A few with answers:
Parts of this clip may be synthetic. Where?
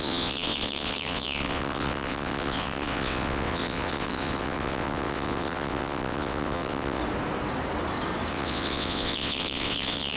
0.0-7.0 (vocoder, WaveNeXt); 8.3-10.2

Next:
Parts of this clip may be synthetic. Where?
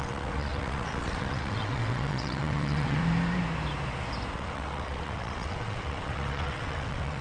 0.0-3.0 (vocoder, WaveNeXt); 4.3-7.2